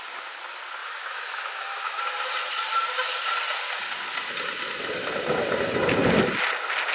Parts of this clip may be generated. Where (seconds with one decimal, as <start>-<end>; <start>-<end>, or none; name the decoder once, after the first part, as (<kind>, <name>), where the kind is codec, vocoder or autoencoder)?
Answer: 0.8-2.0 (autoencoder, DAC-VAE)